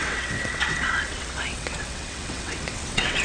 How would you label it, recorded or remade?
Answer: remade